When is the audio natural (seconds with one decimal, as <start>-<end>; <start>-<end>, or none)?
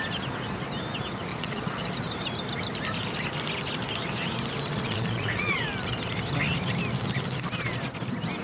0.0-1.3; 1.9-4.7; 5.6-8.4